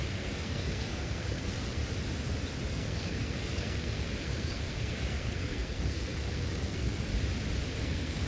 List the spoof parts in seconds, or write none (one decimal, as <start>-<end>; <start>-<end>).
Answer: 0.0-1.8; 2.7-7.1; 7.7-8.3